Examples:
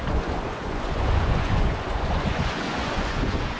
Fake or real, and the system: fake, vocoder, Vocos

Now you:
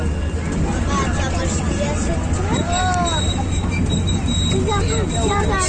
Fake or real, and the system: real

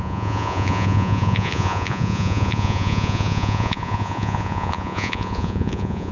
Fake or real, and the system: fake, vocoder, Vocos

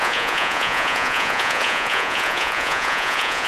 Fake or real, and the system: fake, vocoder, Vocos